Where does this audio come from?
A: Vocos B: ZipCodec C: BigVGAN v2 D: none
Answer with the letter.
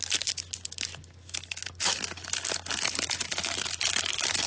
D